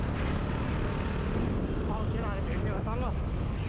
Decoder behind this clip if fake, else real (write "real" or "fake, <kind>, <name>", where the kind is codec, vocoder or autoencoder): real